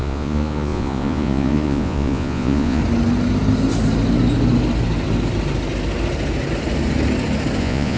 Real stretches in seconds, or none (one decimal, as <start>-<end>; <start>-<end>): 2.8-7.6